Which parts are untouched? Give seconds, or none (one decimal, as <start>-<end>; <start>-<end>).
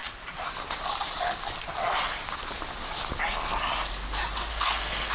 0.0-4.5